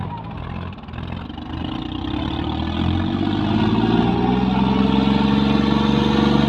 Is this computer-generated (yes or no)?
no